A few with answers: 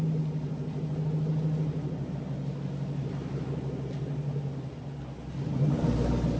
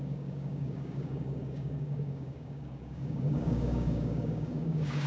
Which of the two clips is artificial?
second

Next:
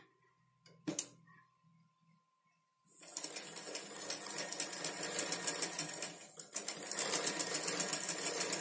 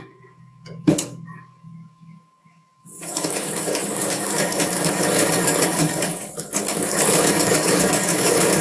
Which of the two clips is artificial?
second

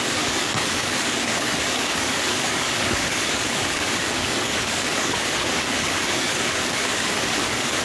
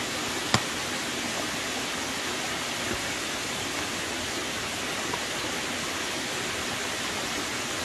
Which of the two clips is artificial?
first